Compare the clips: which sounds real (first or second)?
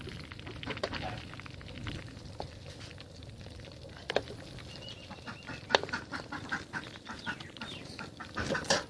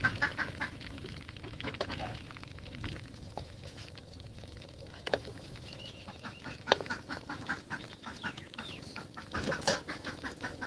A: first